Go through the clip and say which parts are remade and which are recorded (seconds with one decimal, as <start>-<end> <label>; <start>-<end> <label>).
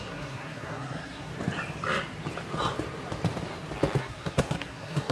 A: 0.0-1.3 remade; 1.3-4.0 recorded; 4.0-5.1 remade